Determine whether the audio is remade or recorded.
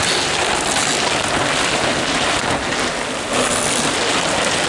recorded